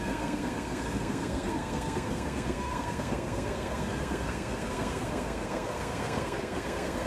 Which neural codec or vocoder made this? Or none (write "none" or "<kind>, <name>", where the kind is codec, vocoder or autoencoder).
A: codec, SNAC